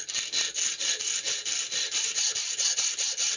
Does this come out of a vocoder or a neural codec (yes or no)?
no